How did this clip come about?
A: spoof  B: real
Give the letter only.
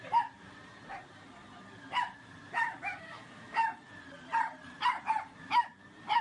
A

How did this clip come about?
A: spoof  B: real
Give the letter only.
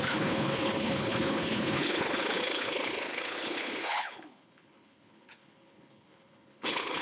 A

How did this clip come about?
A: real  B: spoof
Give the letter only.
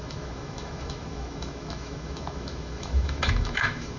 B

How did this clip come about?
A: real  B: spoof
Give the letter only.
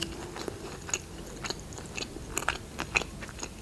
A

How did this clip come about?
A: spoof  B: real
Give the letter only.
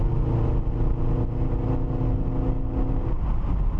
B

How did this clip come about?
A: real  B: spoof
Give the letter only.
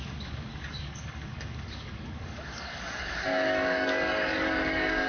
B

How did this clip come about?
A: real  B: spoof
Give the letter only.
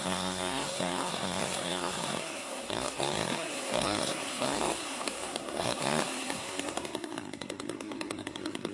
B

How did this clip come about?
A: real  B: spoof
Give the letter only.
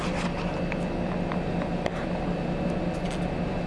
A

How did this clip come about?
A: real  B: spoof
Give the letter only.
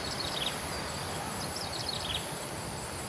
B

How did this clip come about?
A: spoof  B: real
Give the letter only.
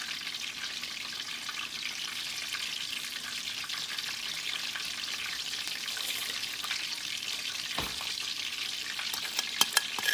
A